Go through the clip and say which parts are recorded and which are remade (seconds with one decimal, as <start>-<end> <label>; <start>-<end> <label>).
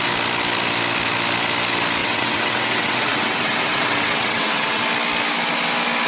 0.0-2.0 recorded; 2.0-4.8 remade; 4.8-6.1 recorded